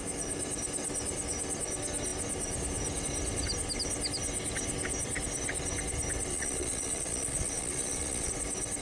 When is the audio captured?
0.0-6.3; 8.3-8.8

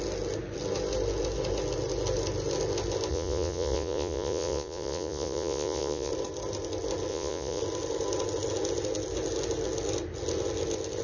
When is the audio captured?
0.0-3.1; 6.1-7.1; 7.6-11.0

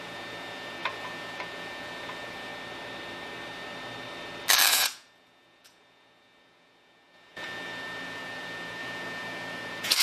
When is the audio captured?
2.5-4.7